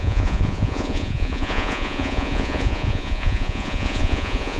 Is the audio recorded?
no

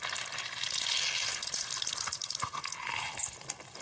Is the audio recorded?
yes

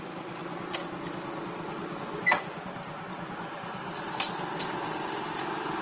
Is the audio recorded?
yes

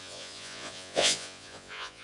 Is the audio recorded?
no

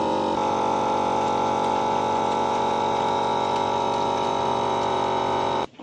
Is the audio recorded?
no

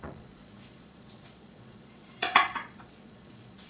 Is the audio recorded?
no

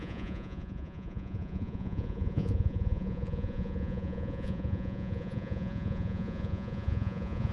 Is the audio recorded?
no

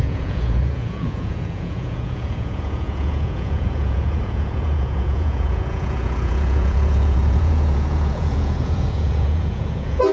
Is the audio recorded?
no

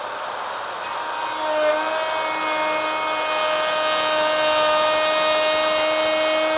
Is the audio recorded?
yes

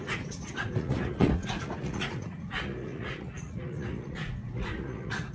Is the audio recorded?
no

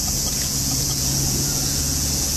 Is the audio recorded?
no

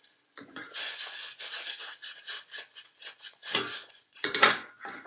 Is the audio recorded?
no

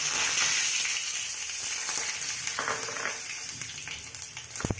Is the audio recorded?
yes